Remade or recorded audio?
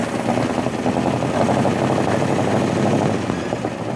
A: recorded